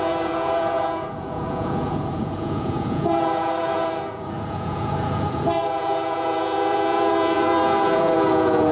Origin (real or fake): fake